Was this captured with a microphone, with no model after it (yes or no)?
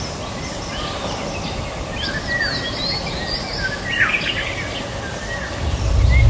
yes